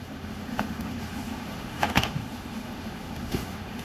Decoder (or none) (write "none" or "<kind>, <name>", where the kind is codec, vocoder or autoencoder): autoencoder, DAC-VAE